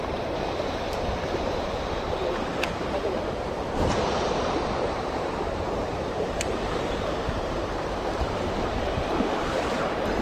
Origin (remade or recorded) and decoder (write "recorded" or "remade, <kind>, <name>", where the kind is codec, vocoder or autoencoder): remade, vocoder, BigVGAN v2